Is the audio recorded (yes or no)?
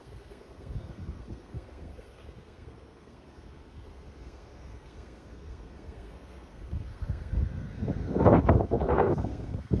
no